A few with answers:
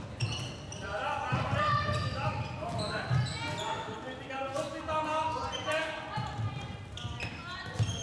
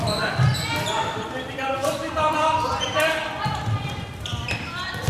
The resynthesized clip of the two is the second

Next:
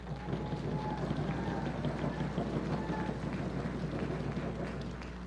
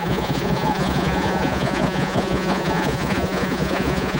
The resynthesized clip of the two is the second